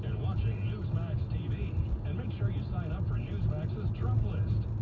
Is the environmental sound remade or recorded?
recorded